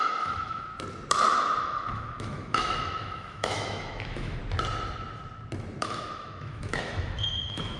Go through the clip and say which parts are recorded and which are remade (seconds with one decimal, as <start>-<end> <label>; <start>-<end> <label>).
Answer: 0.0-0.7 remade; 0.7-1.6 recorded; 1.6-4.4 remade; 4.4-5.8 recorded; 5.8-7.8 remade